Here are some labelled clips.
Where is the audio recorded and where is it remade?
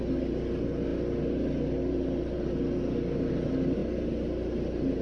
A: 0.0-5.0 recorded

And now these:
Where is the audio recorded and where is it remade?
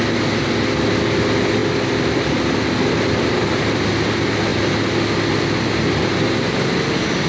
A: 0.0-1.6 recorded; 1.6-3.9 remade; 3.9-7.3 recorded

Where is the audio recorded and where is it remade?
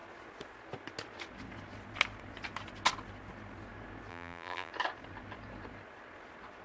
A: 0.0-4.1 recorded; 4.1-4.7 remade; 4.7-6.6 recorded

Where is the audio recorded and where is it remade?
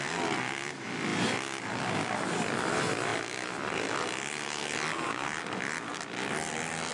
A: 0.0-6.9 recorded